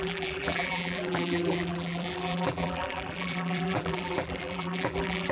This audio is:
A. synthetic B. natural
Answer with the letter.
A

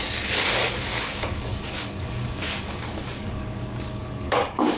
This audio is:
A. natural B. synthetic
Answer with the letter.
B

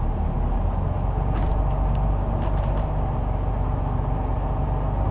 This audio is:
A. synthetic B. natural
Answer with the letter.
B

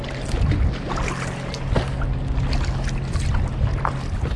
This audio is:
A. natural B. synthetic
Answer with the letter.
A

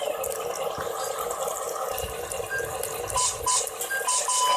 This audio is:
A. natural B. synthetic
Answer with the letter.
A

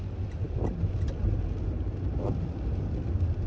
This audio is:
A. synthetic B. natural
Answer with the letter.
B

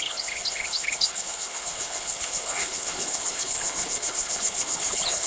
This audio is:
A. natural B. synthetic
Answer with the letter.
B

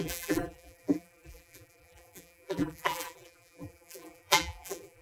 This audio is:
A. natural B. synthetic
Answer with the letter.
B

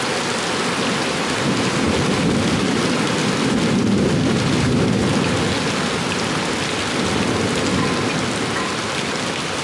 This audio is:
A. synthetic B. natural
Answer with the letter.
B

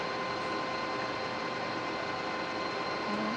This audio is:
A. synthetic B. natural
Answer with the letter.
B